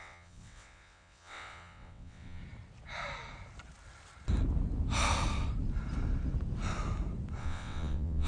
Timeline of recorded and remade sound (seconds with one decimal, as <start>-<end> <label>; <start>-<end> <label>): 0.0-2.4 remade; 2.4-7.4 recorded; 7.4-8.3 remade